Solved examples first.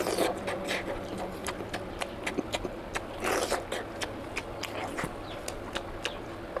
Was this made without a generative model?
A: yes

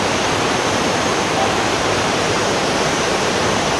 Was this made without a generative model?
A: no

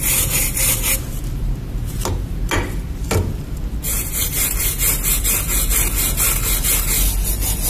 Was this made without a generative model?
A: yes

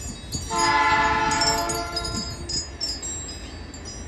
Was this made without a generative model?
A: yes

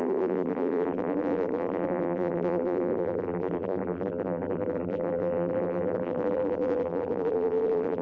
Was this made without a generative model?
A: no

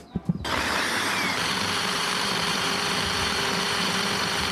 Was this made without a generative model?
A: no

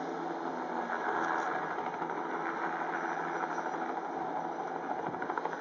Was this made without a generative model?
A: yes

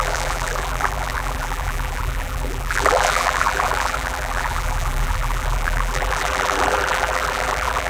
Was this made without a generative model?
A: no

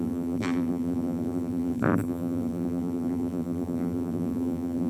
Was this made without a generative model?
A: no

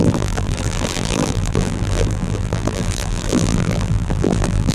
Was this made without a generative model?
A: no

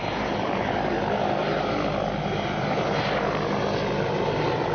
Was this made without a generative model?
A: yes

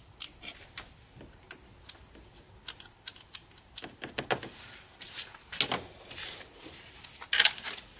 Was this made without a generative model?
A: yes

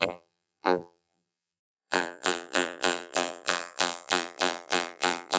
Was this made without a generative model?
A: no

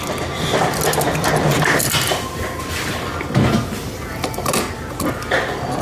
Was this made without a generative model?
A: yes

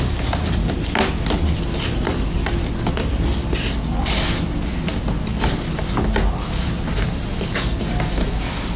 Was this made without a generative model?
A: yes